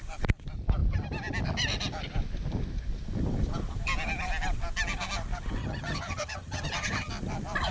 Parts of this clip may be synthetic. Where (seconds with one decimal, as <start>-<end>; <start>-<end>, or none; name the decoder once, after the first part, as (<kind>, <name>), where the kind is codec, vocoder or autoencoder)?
5.6-7.1 (vocoder, HiFi-GAN)